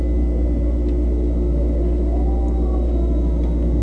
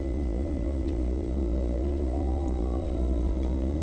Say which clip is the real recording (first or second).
first